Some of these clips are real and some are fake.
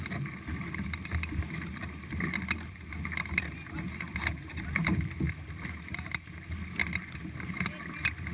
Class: real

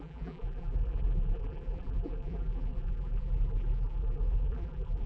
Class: fake